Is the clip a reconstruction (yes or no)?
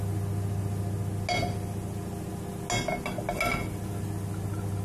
no